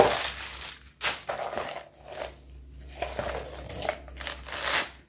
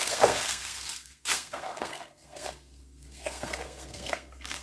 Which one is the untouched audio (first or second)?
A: first